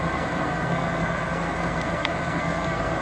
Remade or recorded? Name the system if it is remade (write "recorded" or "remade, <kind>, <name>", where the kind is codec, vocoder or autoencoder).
remade, codec, SNAC